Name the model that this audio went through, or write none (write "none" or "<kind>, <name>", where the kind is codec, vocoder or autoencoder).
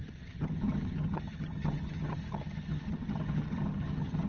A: vocoder, HiFi-GAN